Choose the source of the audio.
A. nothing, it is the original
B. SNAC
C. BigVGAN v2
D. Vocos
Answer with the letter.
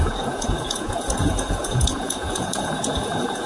D